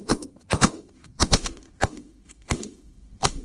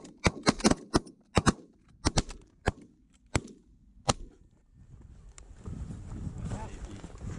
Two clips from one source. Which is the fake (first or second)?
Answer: first